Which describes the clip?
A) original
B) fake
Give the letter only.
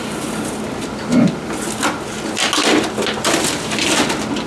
A